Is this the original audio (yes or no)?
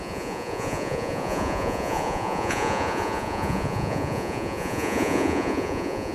no